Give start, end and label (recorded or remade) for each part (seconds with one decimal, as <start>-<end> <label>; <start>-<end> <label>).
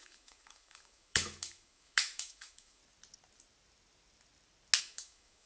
0.0-2.8 remade; 2.8-4.8 recorded; 4.8-5.5 remade